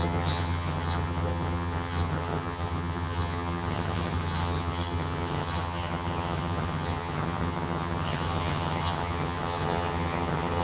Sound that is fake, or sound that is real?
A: fake